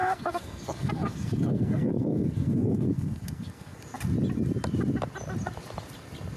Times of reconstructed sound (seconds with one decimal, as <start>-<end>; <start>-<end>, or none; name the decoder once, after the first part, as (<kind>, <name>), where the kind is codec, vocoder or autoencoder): 0.0-3.8 (codec, SNAC)